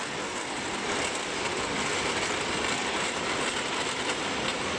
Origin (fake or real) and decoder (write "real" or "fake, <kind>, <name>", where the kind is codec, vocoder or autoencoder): real